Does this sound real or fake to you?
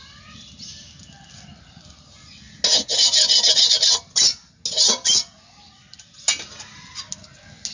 real